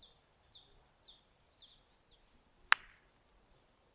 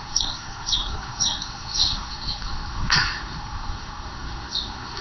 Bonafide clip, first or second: first